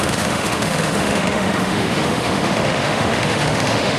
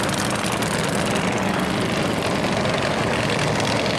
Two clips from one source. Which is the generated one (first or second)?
first